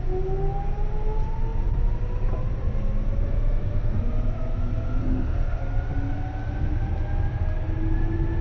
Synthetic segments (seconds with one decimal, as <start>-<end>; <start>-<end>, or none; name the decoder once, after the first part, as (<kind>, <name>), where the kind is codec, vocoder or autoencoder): 3.2-4.0 (autoencoder, DAC-VAE); 5.0-5.6